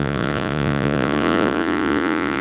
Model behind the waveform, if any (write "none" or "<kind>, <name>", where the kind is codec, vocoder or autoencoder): vocoder, Vocos